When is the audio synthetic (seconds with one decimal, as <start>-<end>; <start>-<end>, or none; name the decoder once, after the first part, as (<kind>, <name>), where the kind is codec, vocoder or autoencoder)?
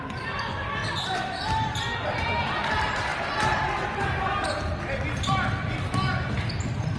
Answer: 0.0-0.8 (vocoder, BigVGAN v2); 2.4-3.1; 6.3-7.0